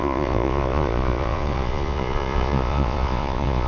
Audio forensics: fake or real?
fake